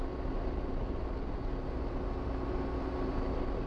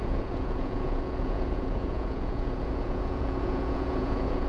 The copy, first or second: second